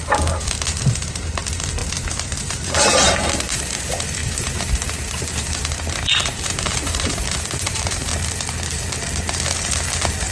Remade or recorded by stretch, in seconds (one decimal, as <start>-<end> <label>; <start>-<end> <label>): 0.0-1.8 remade; 1.8-2.4 recorded; 2.4-8.1 remade; 8.1-10.3 recorded